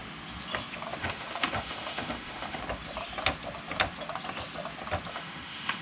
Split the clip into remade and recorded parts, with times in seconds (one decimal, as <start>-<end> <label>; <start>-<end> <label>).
0.0-1.0 recorded; 1.0-2.6 remade; 2.6-5.1 recorded; 5.1-5.8 remade